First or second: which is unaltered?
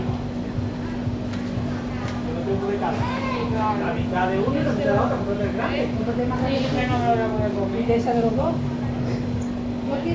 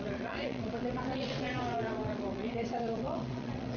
first